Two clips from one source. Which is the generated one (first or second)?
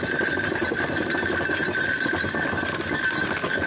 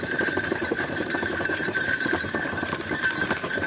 second